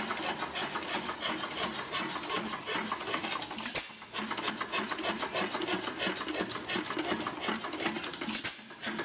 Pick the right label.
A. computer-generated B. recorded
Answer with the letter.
B